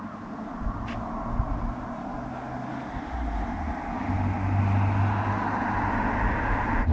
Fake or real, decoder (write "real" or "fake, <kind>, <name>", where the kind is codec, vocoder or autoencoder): real